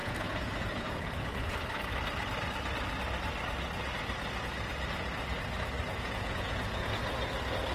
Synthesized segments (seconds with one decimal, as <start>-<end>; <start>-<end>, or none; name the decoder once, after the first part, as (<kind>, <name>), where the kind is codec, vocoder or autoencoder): 0.0-1.5 (vocoder, Vocos); 5.9-7.0